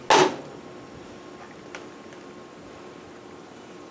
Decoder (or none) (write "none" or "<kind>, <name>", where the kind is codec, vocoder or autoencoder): none